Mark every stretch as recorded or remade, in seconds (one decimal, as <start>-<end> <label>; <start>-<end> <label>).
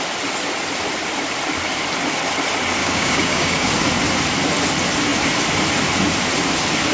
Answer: 0.0-2.8 recorded; 2.8-3.7 remade; 3.7-6.9 recorded